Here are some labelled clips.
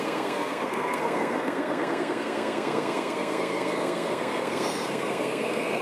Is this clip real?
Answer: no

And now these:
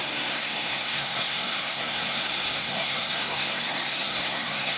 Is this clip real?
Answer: no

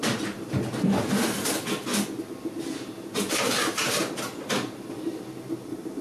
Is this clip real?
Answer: yes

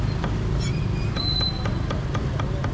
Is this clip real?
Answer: yes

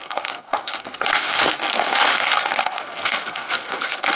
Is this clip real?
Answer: no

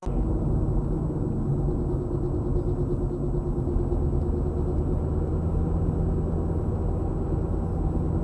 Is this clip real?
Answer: yes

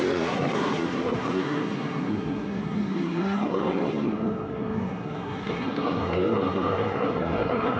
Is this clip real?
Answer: no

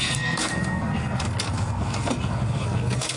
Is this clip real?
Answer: no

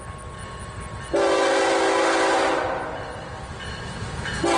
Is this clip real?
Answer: yes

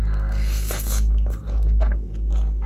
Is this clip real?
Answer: no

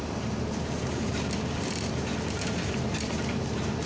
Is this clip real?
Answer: yes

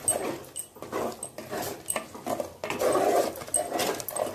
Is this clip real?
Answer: yes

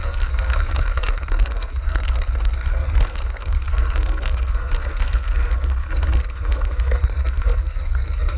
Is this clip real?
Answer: no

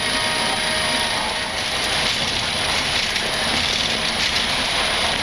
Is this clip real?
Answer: yes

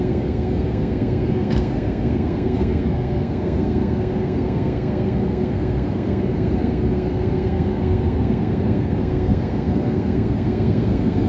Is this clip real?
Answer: no